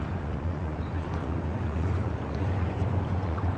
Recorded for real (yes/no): no